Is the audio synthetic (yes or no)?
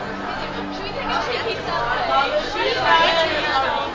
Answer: no